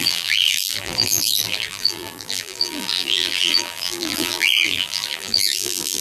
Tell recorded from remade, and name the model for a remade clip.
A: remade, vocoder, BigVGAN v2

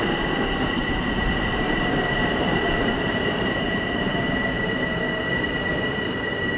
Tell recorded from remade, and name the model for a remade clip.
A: remade, vocoder, BigVGAN v2